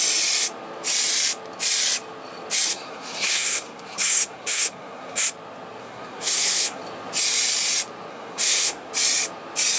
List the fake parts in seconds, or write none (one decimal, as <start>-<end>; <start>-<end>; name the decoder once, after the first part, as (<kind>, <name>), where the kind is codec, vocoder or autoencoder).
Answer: 2.7-5.2 (codec, SNAC); 5.8-6.8; 8.1-8.9